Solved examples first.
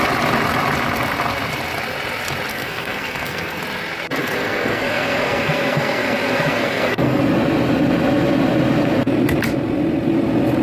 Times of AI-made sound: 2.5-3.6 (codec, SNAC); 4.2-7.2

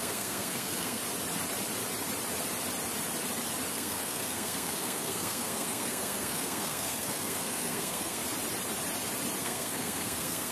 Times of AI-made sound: 0.0-1.0 (codec, SNAC); 3.7-8.2; 9.4-10.5

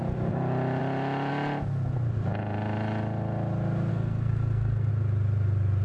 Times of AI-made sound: 3.9-4.9 (codec, SNAC)

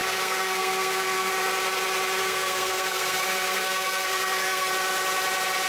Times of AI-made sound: 0.0-1.3 (codec, SNAC); 2.2-4.7

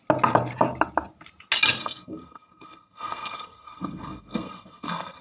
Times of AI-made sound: 1.8-5.2 (codec, SNAC)

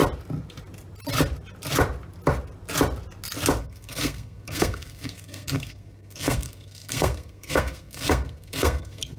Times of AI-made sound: 3.6-9.2 (codec, SNAC)

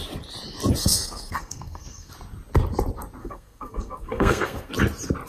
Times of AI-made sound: 0.8-2.1 (codec, SNAC); 3.2-4.7